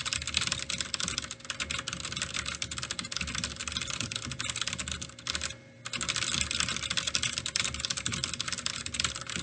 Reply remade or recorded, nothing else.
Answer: recorded